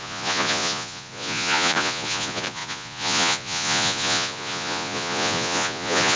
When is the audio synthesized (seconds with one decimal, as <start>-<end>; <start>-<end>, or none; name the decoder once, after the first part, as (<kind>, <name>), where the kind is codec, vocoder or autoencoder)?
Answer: 0.0-6.2 (vocoder, Vocos)